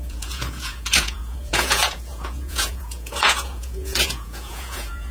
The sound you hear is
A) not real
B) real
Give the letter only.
A